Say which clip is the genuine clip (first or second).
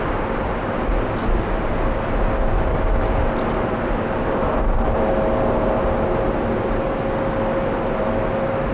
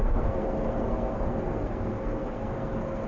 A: first